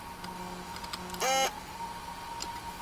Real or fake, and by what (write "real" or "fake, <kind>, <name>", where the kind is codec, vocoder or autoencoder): real